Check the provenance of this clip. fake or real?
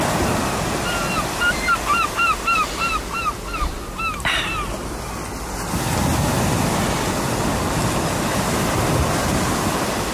real